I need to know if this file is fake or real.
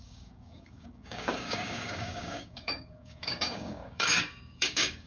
fake